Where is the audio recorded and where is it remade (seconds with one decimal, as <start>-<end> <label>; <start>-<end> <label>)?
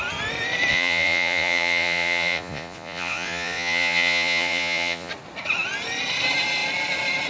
0.0-0.7 recorded; 0.7-5.1 remade; 5.1-7.3 recorded